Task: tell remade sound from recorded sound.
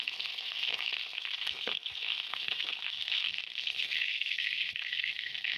remade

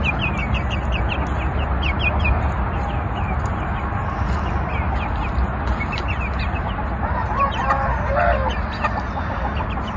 recorded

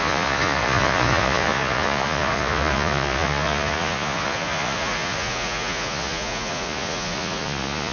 remade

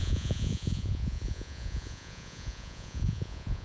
remade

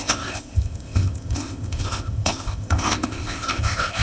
remade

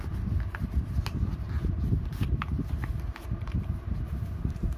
remade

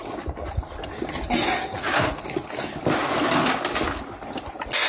recorded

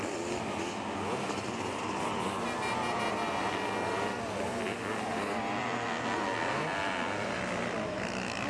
recorded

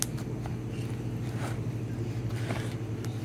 recorded